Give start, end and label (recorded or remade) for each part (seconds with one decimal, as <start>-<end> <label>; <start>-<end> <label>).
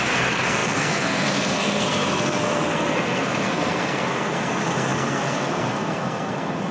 0.0-6.7 remade